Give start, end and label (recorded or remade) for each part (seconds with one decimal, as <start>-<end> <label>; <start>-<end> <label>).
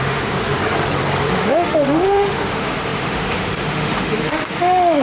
0.0-0.6 remade; 0.6-1.2 recorded; 1.2-5.0 remade